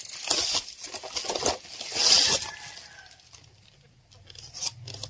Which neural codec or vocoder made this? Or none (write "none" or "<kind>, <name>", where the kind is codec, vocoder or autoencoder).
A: none